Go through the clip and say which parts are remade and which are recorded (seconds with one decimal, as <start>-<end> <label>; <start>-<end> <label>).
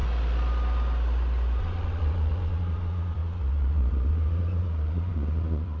0.0-1.6 recorded; 1.6-5.8 remade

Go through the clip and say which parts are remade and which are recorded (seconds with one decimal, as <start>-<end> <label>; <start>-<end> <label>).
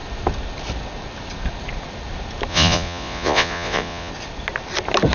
0.0-2.5 recorded; 2.5-4.1 remade; 4.1-5.1 recorded